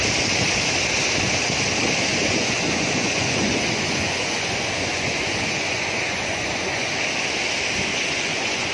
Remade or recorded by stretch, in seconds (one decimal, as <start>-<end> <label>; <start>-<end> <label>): 0.0-2.1 recorded; 2.1-7.0 remade; 7.0-7.9 recorded; 7.9-8.7 remade